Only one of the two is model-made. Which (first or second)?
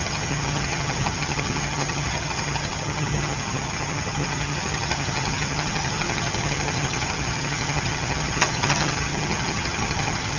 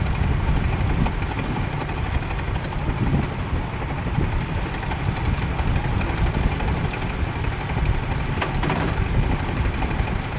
first